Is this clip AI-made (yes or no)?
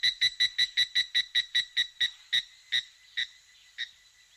no